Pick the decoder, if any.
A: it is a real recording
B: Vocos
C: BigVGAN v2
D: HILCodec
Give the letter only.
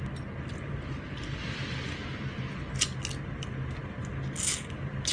A